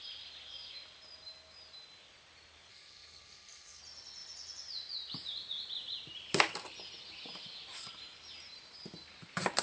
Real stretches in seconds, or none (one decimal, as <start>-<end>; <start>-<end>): 0.0-2.7; 3.8-9.6